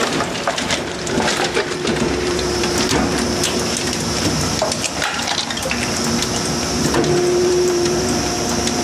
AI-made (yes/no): yes